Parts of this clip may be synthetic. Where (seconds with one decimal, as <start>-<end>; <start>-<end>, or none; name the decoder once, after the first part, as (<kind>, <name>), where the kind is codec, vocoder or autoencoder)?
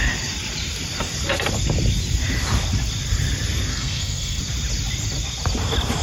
3.7-4.4 (codec, SNAC)